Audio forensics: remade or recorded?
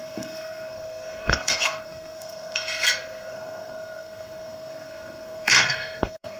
remade